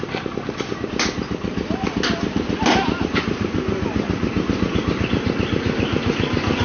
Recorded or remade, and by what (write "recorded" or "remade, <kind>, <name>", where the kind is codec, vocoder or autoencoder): recorded